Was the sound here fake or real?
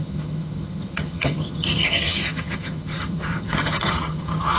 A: fake